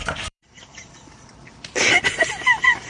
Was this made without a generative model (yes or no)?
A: no